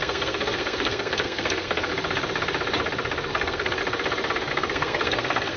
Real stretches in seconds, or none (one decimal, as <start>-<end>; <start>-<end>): 1.9-3.3; 3.8-4.5